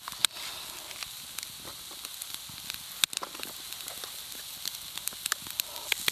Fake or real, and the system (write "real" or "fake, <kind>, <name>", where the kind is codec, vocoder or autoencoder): real